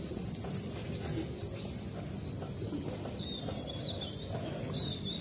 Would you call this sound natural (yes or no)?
yes